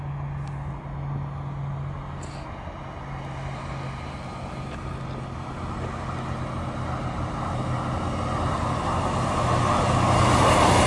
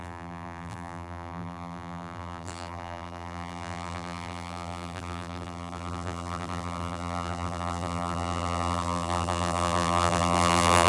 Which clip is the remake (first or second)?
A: second